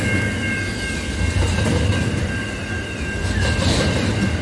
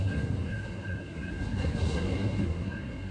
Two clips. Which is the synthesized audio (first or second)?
second